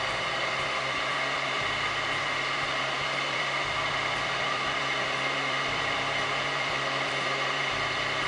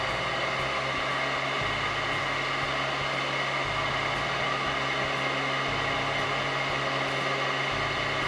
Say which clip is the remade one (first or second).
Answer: first